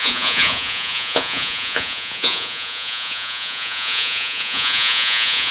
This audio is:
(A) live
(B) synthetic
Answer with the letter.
B